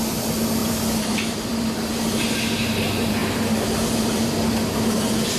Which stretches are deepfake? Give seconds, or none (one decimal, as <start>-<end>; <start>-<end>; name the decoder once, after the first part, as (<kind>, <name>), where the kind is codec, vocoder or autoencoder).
0.0-5.4 (vocoder, BigVGAN v2)